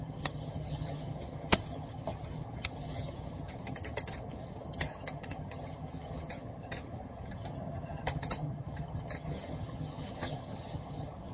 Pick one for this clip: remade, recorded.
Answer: remade